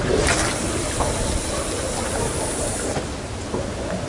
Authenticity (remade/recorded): recorded